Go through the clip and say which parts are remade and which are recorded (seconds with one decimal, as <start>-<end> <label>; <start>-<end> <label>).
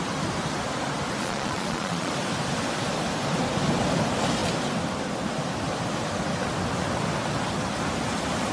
0.0-1.2 recorded; 1.2-2.1 remade; 2.1-8.5 recorded